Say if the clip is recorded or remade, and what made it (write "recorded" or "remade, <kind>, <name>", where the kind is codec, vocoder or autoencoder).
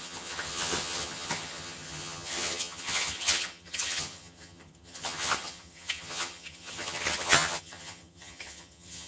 remade, vocoder, HiFi-GAN